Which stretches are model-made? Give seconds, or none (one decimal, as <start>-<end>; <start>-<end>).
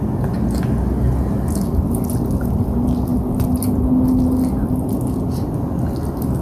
none